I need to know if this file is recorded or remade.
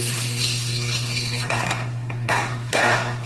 remade